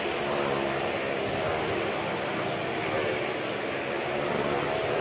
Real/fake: real